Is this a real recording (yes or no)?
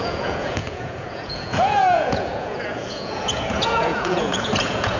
no